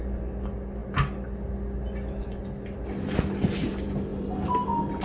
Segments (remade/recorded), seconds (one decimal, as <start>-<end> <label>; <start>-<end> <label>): 0.0-5.0 recorded